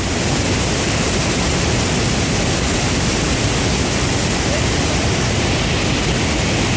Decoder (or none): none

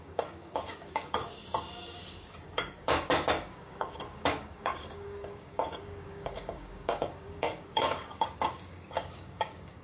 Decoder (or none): codec, DAC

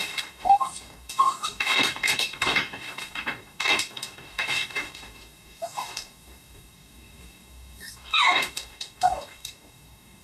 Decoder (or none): codec, DAC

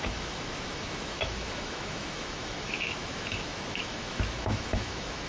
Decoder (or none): autoencoder, DAC-VAE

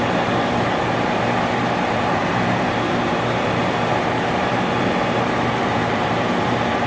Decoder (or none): vocoder, BigVGAN v2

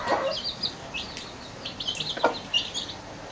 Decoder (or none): none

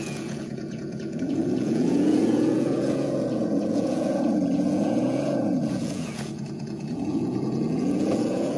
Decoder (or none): vocoder, Vocos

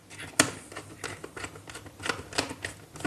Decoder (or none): none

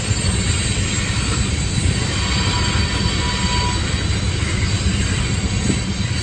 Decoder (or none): none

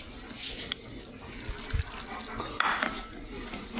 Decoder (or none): none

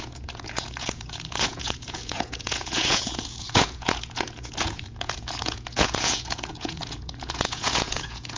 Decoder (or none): vocoder, Vocos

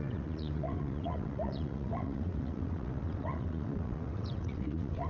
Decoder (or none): vocoder, WaveNeXt